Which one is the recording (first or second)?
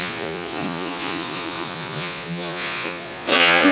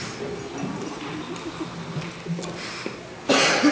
second